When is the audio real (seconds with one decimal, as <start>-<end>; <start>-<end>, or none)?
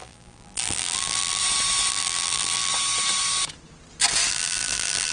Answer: 1.4-1.9; 2.7-4.3